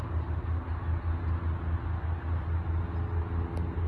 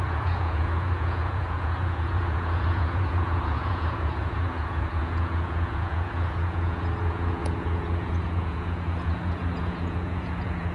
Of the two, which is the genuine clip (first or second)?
first